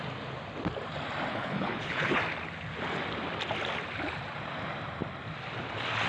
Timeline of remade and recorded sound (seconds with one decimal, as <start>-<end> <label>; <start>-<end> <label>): 0.0-1.3 recorded; 1.3-2.2 remade; 2.2-6.1 recorded

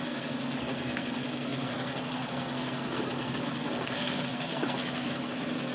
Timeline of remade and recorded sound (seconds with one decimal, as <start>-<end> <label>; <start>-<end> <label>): 0.0-5.7 remade

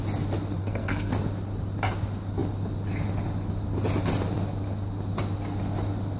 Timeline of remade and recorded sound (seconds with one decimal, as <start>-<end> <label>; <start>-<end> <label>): 0.0-0.6 recorded; 0.6-1.1 remade; 1.1-6.2 recorded

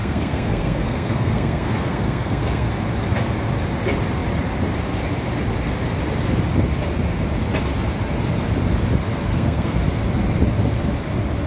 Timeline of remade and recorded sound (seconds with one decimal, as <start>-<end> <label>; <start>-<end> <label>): 0.0-2.7 remade; 2.7-9.3 recorded; 9.3-9.8 remade; 9.8-11.5 recorded

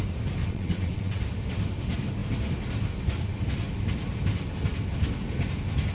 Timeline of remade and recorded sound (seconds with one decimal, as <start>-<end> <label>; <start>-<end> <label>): 0.0-0.4 recorded; 0.4-1.2 remade; 1.2-5.9 recorded

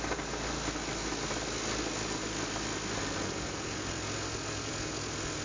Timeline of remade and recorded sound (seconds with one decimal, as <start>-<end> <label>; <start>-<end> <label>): 0.0-5.4 recorded

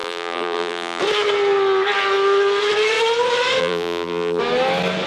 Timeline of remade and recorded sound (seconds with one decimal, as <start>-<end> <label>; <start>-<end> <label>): 0.0-1.0 remade; 1.0-3.6 recorded; 3.6-4.4 remade; 4.4-5.1 recorded

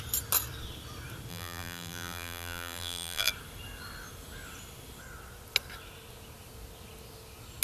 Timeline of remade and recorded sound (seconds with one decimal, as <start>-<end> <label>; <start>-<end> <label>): 0.0-1.3 recorded; 1.3-3.3 remade; 3.3-7.6 recorded